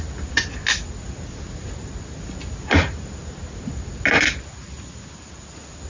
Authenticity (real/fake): real